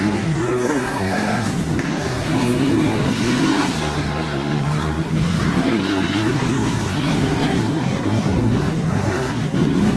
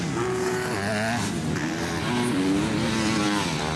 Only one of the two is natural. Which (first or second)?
second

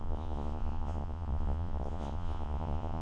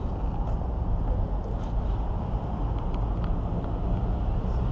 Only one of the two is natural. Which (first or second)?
second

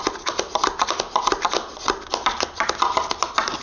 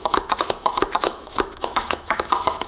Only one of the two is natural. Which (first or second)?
first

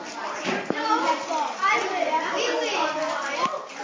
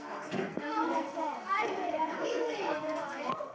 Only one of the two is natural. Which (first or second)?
first